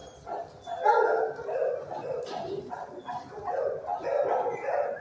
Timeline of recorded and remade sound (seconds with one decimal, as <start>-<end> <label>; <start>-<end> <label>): 0.0-5.0 recorded